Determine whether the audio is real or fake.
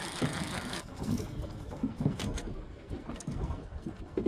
fake